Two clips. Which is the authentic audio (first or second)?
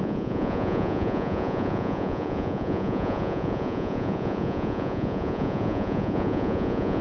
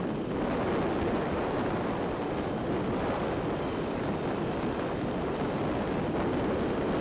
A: second